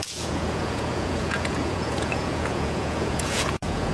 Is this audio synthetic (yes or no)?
yes